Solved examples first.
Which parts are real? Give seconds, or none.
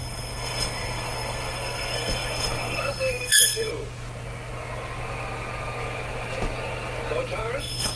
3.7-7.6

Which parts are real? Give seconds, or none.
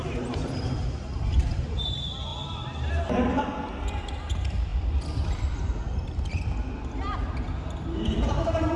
none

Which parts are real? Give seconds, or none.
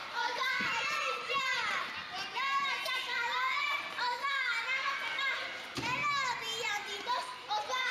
0.8-6.5; 7.5-7.9